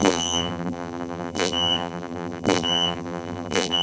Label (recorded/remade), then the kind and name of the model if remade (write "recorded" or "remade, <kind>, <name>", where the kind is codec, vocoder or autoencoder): remade, vocoder, BigVGAN v2